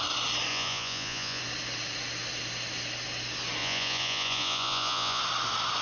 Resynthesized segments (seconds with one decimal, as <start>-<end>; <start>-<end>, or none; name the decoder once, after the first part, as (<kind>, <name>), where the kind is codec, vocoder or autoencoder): 0.5-1.4 (vocoder, Vocos); 3.6-5.2